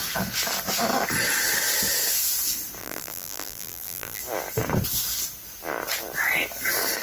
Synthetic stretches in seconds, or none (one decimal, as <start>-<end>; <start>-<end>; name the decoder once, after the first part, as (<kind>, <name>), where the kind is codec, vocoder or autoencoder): 2.8-4.2 (vocoder, BigVGAN v2)